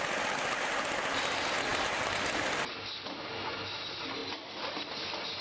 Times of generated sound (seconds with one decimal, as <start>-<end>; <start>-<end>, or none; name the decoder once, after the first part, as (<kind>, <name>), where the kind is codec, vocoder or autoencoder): none